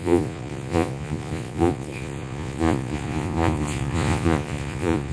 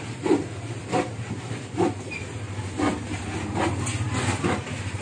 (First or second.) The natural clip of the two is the second